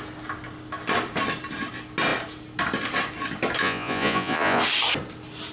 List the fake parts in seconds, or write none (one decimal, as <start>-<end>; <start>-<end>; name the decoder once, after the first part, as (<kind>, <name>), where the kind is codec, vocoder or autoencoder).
3.6-4.6 (vocoder, Vocos)

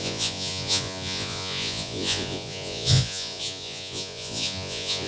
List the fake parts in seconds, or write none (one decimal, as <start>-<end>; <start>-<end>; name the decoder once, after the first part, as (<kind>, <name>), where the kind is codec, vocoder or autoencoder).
0.0-5.1 (vocoder, Vocos)